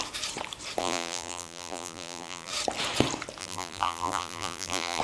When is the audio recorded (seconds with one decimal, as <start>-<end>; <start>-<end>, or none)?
0.0-0.8; 2.5-3.4